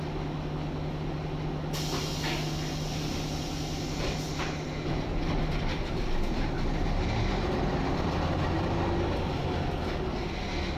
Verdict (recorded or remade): recorded